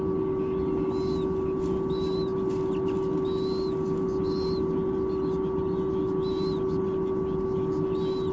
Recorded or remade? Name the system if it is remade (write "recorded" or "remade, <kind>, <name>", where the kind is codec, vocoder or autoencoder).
recorded